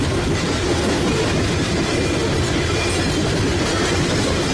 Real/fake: real